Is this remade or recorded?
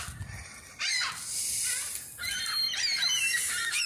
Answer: recorded